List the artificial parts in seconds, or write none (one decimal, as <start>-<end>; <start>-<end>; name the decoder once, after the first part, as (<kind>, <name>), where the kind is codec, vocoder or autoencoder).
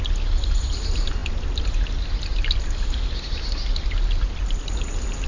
none